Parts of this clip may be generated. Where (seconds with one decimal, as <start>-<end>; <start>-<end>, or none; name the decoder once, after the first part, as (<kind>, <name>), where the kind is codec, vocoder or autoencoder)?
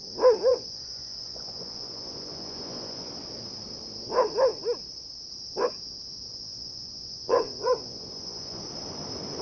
0.5-3.1 (vocoder, Vocos); 6.3-8.6